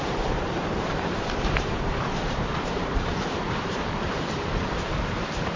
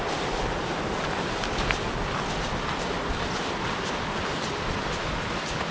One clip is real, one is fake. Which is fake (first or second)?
first